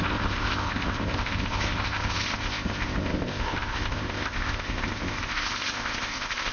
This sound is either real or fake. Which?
fake